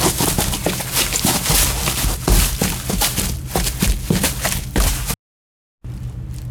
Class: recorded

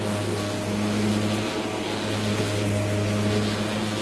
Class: recorded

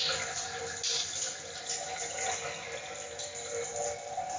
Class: recorded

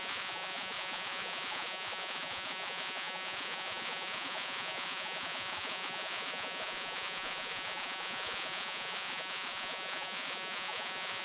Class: remade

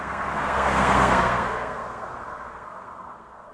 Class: remade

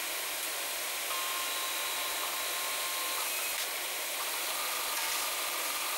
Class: recorded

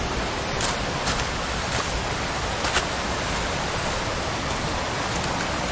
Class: recorded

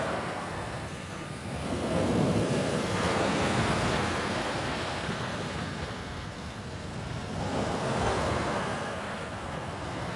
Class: remade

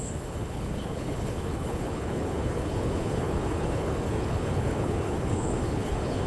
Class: remade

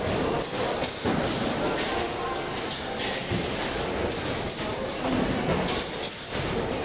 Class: recorded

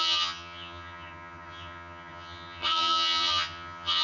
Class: remade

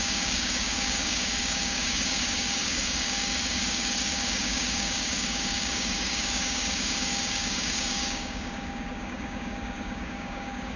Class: remade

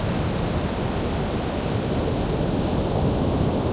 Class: recorded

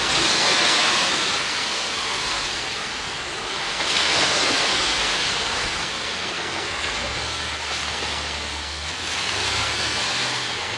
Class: remade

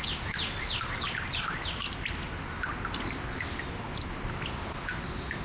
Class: recorded